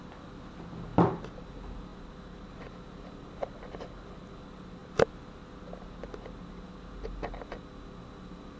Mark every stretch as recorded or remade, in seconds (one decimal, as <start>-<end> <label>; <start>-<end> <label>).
0.0-8.6 recorded